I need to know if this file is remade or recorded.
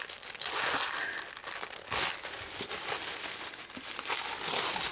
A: recorded